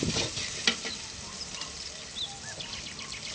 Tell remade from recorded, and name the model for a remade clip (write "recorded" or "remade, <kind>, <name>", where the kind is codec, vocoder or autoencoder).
recorded